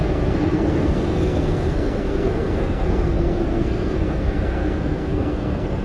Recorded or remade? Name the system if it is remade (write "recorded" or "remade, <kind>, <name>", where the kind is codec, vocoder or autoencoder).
remade, codec, SNAC